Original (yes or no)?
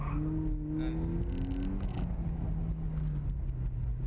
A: yes